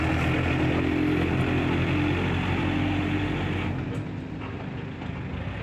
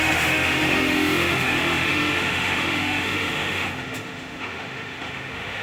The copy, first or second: second